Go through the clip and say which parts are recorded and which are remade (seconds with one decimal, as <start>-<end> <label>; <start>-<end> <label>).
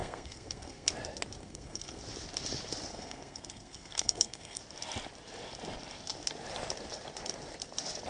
0.0-0.9 remade; 0.9-1.4 recorded; 1.4-2.0 remade; 2.0-2.9 recorded; 2.9-4.6 remade; 4.6-8.1 recorded